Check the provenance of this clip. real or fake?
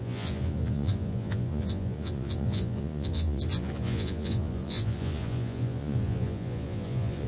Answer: fake